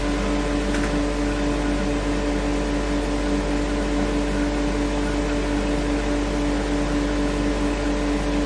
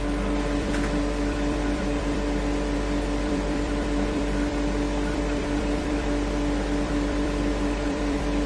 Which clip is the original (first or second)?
first